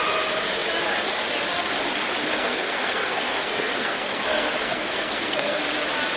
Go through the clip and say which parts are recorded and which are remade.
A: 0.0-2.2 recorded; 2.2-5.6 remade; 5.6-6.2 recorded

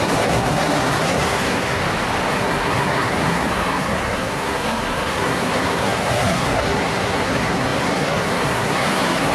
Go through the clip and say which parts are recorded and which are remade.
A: 0.0-1.8 remade; 1.8-2.3 recorded; 2.3-9.3 remade

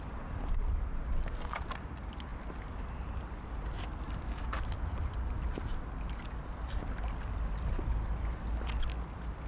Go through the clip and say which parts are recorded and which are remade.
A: 0.0-9.5 recorded